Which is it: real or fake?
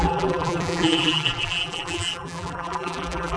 fake